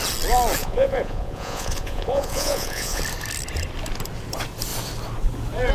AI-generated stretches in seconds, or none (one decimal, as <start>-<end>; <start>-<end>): 0.6-3.0